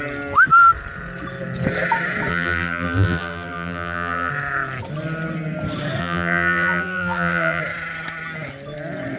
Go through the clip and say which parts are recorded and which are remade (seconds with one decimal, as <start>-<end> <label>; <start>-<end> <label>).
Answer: 0.0-2.3 recorded; 2.3-4.3 remade; 4.3-6.0 recorded; 6.0-7.6 remade; 7.6-9.2 recorded